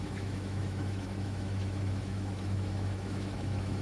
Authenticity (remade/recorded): remade